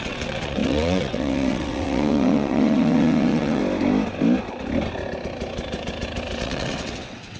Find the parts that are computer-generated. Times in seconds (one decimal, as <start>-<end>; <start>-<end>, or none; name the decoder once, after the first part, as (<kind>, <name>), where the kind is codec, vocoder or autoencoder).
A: 0.0-3.6 (vocoder, WaveNeXt); 6.4-7.4